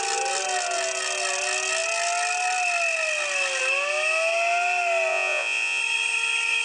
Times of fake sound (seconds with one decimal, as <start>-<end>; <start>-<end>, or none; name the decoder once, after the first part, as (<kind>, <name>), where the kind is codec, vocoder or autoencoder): 5.1-5.8 (vocoder, Vocos)